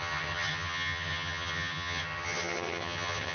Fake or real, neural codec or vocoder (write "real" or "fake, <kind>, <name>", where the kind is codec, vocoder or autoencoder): fake, vocoder, HiFi-GAN